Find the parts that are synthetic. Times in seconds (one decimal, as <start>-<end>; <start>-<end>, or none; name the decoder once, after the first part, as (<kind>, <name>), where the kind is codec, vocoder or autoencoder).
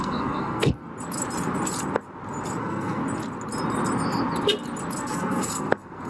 0.0-0.9 (codec, SNAC); 2.6-3.0; 5.0-6.1